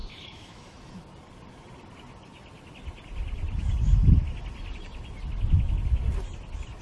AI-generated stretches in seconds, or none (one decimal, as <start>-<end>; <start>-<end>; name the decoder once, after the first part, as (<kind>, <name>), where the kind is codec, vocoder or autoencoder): 0.0-0.8 (autoencoder, DAC-VAE)